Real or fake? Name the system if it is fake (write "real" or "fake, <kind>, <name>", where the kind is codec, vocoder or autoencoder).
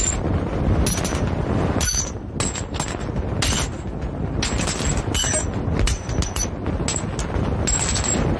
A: real